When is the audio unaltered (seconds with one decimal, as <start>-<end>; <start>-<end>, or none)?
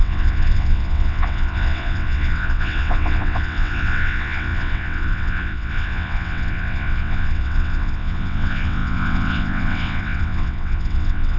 none